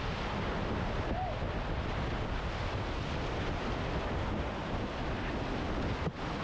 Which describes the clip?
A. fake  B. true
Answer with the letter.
B